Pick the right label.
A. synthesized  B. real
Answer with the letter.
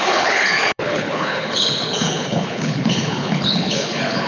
A